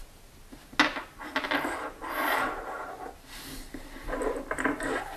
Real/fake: real